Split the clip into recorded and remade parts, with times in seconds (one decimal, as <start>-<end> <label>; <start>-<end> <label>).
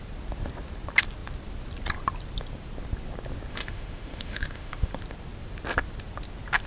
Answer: 0.0-3.5 recorded; 3.5-4.9 remade; 4.9-6.7 recorded